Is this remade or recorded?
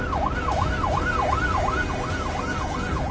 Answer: recorded